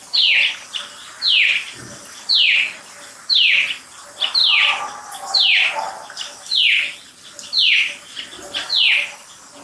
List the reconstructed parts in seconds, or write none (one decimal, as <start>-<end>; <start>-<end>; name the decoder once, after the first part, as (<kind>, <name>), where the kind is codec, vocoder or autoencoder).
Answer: none